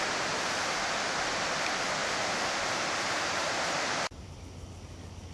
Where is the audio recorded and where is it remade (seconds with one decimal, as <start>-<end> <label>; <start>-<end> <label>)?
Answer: 0.0-2.0 recorded; 2.0-4.4 remade; 4.4-5.3 recorded

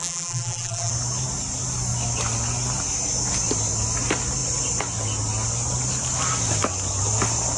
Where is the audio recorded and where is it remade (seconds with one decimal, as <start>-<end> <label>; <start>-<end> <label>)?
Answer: 0.0-0.9 remade; 0.9-7.6 recorded

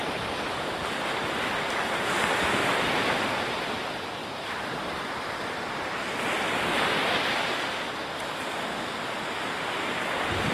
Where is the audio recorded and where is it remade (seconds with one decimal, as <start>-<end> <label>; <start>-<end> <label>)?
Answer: 0.0-0.8 remade; 0.8-2.6 recorded; 2.6-3.8 remade; 3.8-4.2 recorded; 4.2-5.2 remade; 5.2-10.5 recorded

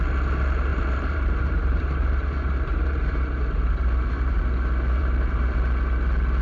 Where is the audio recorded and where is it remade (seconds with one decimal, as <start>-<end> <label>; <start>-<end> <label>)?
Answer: 0.0-0.7 recorded; 0.7-4.4 remade; 4.4-5.0 recorded; 5.0-5.6 remade; 5.6-6.4 recorded

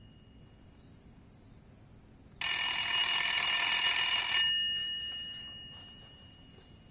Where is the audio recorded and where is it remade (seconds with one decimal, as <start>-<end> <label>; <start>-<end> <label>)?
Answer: 0.0-3.0 recorded; 3.0-4.2 remade; 4.2-4.8 recorded; 4.8-6.9 remade

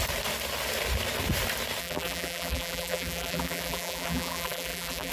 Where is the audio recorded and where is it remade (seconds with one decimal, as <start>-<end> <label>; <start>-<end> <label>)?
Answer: 0.0-1.8 recorded; 1.8-5.1 remade

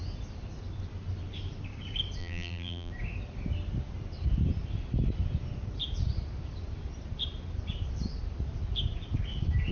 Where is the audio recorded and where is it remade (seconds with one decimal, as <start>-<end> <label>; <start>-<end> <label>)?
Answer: 0.0-2.2 recorded; 2.2-2.9 remade; 2.9-9.7 recorded